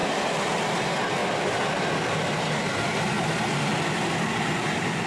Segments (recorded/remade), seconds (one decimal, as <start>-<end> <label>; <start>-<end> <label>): 0.0-1.2 recorded; 1.2-3.4 remade; 3.4-5.1 recorded